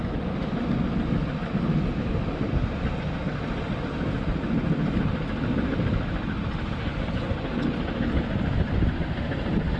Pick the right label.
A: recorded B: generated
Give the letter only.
A